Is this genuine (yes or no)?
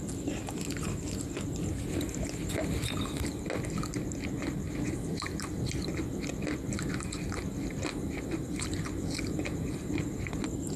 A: yes